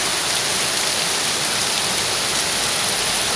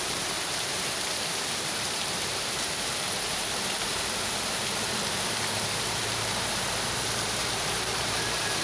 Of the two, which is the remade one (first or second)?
second